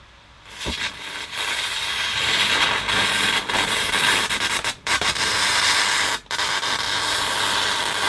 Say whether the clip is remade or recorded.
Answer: remade